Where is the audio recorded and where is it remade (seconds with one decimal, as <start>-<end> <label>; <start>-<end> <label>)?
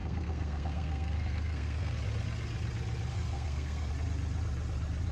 0.0-2.0 remade; 2.0-3.1 recorded; 3.1-3.9 remade; 3.9-5.1 recorded